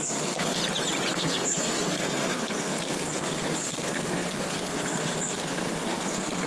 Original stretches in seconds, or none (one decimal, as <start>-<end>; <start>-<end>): 0.6-1.1